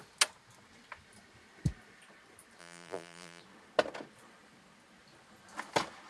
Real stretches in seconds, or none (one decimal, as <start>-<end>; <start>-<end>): 0.0-2.6; 3.4-6.1